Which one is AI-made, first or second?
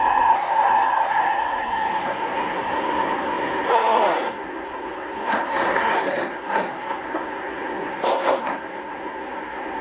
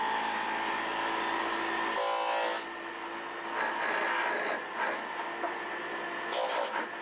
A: first